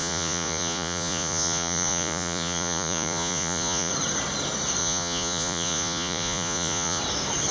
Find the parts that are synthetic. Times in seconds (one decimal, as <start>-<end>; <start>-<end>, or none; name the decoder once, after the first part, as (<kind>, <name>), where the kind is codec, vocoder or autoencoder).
0.0-3.9 (vocoder, Vocos); 4.8-7.0

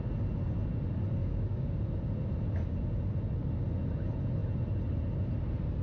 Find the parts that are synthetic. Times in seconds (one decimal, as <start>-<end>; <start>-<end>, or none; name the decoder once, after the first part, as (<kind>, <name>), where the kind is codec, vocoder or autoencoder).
1.2-1.8 (codec, DAC)

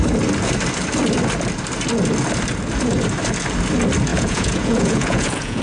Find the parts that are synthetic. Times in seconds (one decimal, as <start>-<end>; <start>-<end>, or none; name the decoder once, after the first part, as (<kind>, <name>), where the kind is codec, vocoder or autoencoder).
4.1-5.6 (vocoder, Vocos)

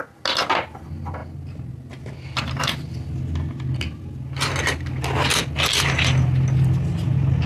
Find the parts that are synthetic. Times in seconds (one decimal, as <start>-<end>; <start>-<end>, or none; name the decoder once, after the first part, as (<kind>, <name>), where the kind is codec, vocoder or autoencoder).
none

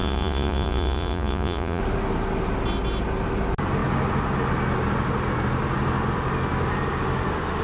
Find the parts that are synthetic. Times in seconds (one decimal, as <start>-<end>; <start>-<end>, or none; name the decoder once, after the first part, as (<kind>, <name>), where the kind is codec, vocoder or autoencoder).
0.0-1.8 (vocoder, Vocos)

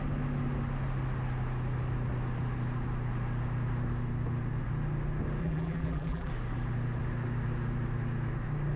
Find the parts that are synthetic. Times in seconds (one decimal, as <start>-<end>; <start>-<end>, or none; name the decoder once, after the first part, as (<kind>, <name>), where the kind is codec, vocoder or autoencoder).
5.4-6.3 (vocoder, BigVGAN v2)

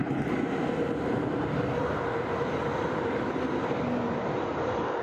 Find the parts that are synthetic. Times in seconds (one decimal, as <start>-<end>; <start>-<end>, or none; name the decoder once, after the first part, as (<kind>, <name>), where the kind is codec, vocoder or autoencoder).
none